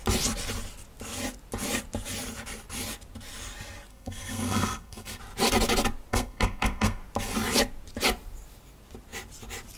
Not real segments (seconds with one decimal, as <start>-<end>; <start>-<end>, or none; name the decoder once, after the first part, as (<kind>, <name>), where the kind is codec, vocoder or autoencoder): 3.9-5.2 (codec, SNAC); 6.1-7.0